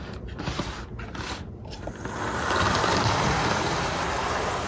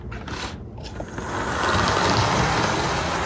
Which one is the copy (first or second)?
first